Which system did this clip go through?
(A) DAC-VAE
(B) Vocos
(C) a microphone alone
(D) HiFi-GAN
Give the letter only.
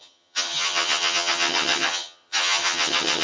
D